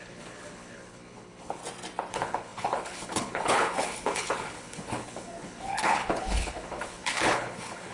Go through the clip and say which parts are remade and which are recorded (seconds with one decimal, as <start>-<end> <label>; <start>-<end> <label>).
0.0-1.6 remade; 1.6-2.1 recorded; 2.1-7.9 remade